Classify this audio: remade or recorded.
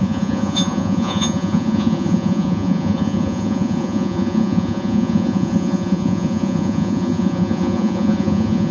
remade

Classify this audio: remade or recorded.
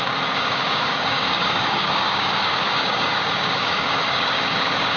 remade